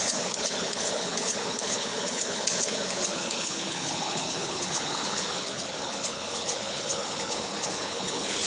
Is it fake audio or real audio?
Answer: fake